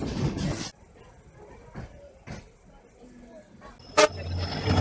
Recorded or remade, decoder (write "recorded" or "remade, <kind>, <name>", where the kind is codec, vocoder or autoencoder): recorded